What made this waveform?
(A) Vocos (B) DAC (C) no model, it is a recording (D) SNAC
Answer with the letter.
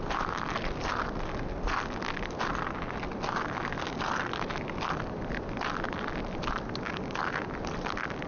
C